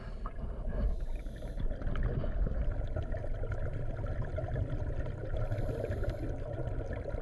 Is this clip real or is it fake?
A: real